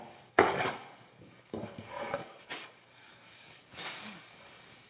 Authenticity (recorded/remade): remade